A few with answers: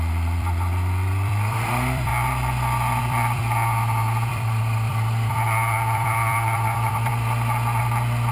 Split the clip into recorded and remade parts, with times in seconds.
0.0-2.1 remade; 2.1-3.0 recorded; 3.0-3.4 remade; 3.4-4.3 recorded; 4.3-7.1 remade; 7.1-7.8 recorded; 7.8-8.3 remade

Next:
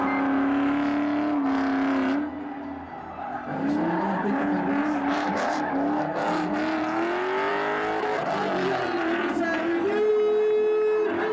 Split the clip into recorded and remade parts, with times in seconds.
0.0-4.8 recorded; 4.8-5.7 remade; 5.7-11.3 recorded

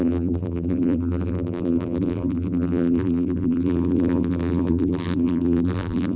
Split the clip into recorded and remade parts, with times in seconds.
0.0-6.2 remade

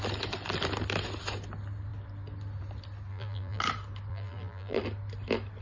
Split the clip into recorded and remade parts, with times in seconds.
0.0-3.1 recorded; 3.1-3.6 remade; 3.6-4.1 recorded; 4.1-4.8 remade; 4.8-5.6 recorded

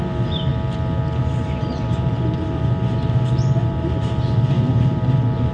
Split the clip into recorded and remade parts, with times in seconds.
0.0-0.5 remade; 0.5-1.2 recorded; 1.2-5.5 remade